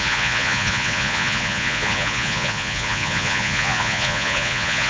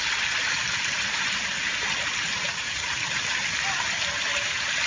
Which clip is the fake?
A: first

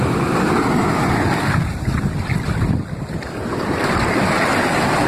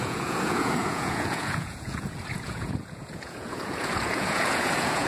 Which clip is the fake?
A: second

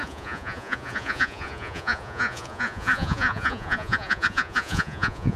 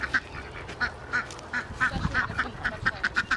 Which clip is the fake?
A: first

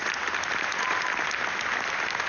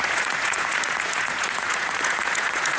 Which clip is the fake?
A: second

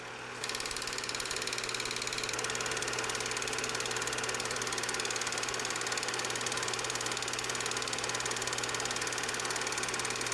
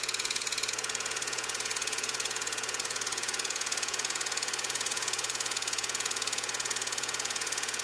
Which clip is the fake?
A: second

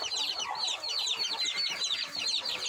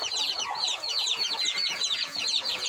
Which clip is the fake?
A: second